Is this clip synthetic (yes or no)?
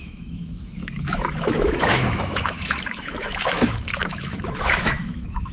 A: yes